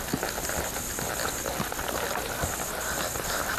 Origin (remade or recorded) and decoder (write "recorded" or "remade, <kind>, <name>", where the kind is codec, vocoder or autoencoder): recorded